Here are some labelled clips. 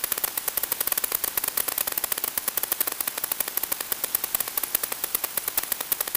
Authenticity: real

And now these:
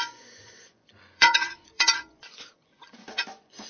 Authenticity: fake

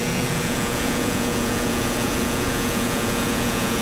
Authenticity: fake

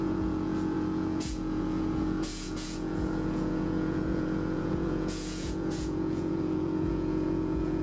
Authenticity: fake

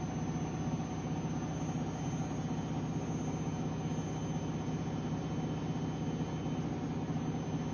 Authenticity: real